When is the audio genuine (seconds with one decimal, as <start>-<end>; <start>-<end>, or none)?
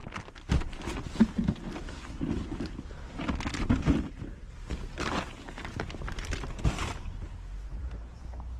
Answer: 0.0-8.6